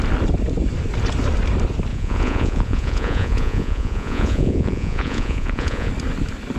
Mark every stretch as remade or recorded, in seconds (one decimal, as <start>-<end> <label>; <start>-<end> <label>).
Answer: 0.0-1.9 recorded; 1.9-5.9 remade; 5.9-6.6 recorded